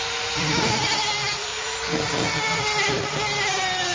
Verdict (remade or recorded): recorded